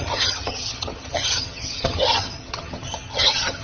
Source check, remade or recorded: remade